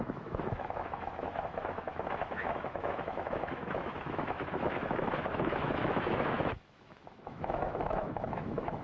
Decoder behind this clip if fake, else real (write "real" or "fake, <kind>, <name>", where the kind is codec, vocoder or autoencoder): fake, autoencoder, DAC-VAE